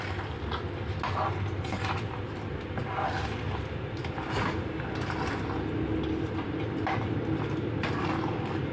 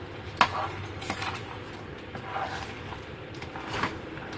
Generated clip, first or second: second